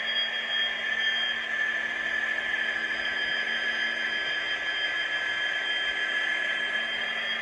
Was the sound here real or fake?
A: real